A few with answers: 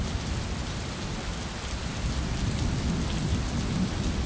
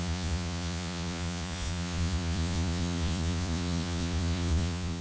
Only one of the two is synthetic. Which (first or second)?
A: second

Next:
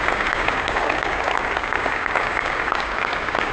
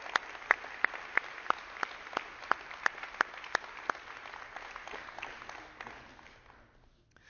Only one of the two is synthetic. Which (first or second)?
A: first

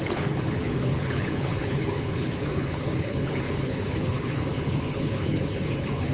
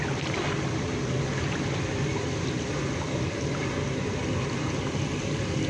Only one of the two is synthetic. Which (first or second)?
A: first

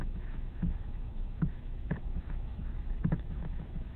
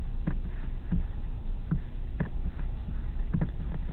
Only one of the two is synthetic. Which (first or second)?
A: first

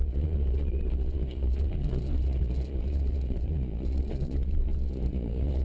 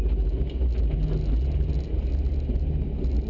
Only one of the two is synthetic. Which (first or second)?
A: first